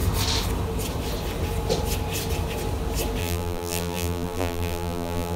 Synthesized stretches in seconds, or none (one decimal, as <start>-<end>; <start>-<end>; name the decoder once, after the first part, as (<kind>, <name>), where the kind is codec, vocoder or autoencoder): 3.2-5.4 (vocoder, BigVGAN v2)